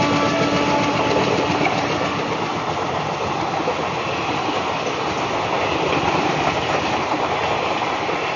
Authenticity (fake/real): real